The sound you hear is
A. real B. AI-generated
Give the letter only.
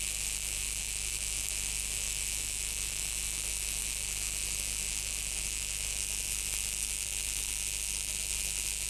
B